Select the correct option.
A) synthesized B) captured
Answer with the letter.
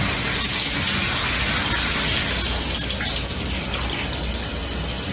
B